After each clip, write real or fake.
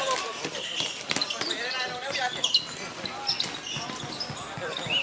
real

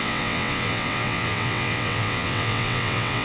fake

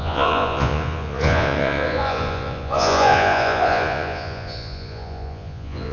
fake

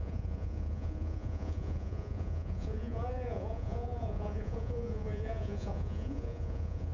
fake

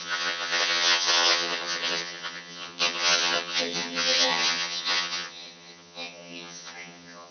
fake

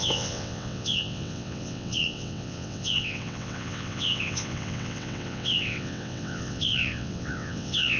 fake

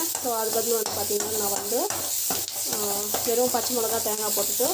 real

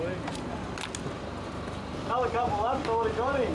real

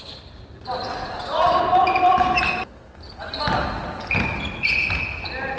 real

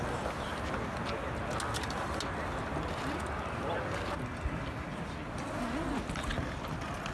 real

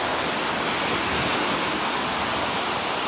real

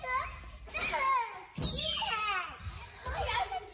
real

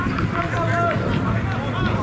real